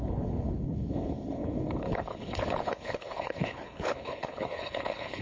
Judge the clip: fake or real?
fake